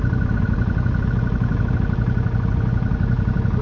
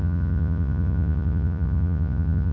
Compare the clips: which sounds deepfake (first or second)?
second